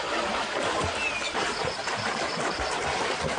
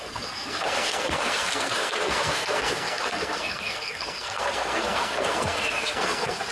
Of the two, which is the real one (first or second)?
first